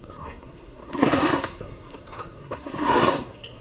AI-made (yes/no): yes